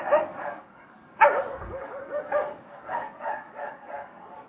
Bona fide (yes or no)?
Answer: no